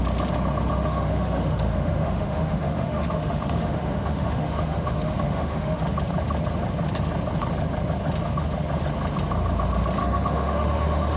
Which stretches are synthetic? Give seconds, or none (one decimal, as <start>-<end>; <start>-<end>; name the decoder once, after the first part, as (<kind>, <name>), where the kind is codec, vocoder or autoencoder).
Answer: 0.7-5.8 (autoencoder, DAC-VAE); 10.0-11.2